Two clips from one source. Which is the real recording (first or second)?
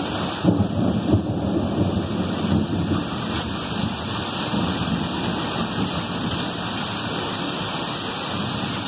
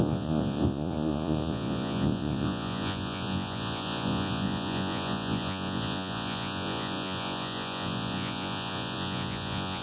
first